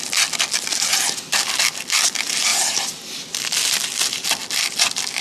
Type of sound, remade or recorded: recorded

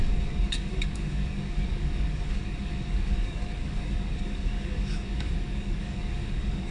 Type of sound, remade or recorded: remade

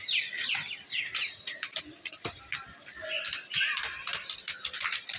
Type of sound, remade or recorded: recorded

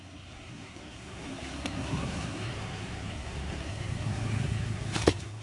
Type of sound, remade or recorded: remade